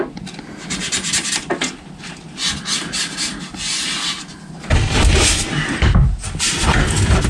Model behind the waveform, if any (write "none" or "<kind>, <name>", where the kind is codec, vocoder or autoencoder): none